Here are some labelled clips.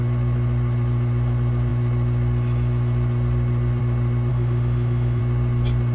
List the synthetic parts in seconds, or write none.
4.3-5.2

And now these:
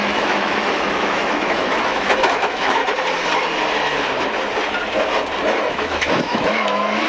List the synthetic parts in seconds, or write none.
0.0-2.8; 5.7-7.1

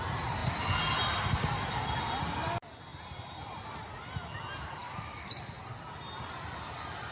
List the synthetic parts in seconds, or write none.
4.8-5.6

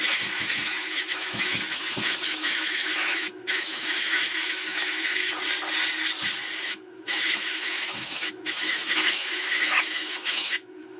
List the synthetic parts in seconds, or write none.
0.0-5.2; 6.6-11.0

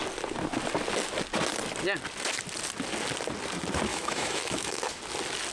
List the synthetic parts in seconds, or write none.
3.9-5.0

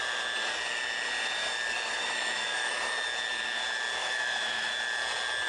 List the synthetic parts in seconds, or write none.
2.0-2.7; 4.0-4.7